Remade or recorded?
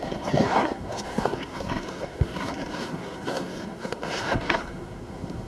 remade